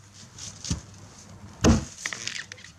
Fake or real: real